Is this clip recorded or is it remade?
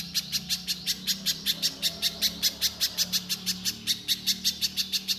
recorded